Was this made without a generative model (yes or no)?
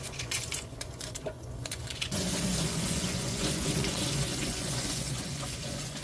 no